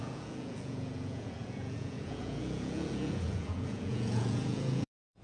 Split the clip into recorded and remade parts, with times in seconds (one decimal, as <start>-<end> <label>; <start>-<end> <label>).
0.0-5.2 remade